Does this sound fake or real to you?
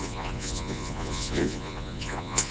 fake